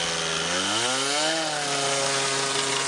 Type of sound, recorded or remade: recorded